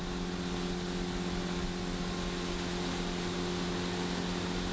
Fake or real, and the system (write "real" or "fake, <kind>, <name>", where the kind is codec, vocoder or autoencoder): real